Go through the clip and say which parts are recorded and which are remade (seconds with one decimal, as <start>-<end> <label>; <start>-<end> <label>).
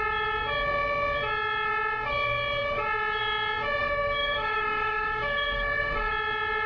0.0-3.8 recorded; 3.8-6.1 remade; 6.1-6.7 recorded